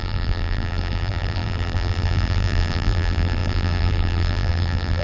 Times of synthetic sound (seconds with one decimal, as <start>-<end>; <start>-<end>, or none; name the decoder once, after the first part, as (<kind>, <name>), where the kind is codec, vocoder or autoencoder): 0.0-5.0 (vocoder, BigVGAN v2)